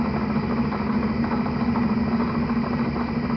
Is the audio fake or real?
real